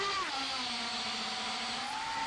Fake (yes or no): no